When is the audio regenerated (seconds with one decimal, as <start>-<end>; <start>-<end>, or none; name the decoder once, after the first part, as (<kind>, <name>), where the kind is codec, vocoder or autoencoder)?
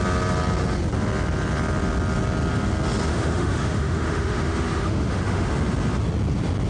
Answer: 3.1-5.5 (autoencoder, DAC-VAE)